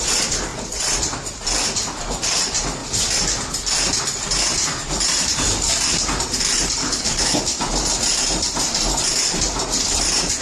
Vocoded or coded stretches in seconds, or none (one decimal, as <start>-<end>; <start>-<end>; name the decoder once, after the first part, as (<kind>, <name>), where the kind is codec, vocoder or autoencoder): 6.8-7.4 (codec, HILCodec)